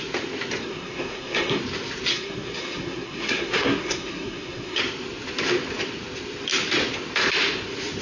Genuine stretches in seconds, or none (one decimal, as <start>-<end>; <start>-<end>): 0.0-0.6; 1.6-2.1; 4.8-8.0